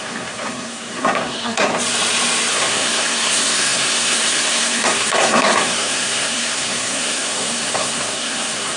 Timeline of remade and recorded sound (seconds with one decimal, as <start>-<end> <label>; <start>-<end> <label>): 0.0-1.7 remade; 1.7-2.5 recorded; 2.5-8.8 remade